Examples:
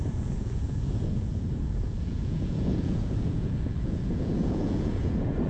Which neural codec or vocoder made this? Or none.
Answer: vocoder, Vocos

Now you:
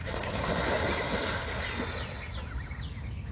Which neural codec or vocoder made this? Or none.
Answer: none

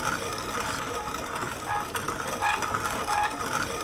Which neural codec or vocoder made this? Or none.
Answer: none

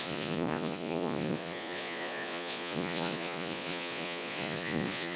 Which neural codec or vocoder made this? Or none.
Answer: vocoder, Vocos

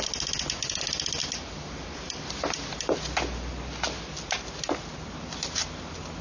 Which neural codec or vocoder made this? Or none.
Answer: none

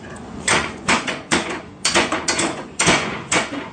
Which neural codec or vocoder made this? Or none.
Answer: vocoder, Vocos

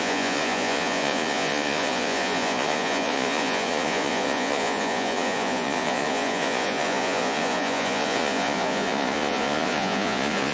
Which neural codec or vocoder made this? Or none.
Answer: vocoder, Vocos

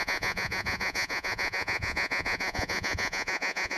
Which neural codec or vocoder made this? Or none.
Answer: vocoder, Vocos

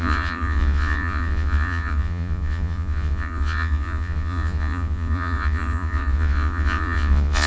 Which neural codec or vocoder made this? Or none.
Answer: vocoder, Vocos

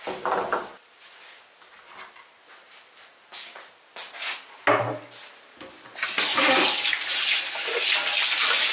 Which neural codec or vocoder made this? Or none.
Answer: none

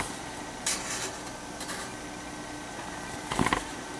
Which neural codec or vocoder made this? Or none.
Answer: none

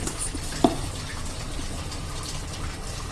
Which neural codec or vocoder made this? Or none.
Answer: none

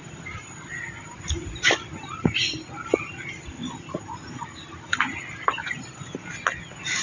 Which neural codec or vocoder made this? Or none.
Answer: none